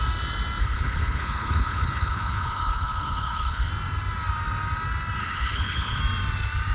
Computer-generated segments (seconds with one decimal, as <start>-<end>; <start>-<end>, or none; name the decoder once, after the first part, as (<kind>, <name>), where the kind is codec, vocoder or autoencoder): 0.6-3.7 (codec, HILCodec); 5.2-6.0